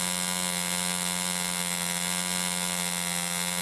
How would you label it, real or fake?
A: real